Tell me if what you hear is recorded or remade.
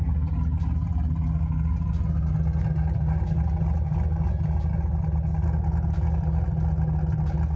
recorded